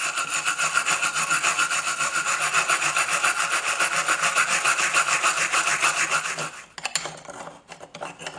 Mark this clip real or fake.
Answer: real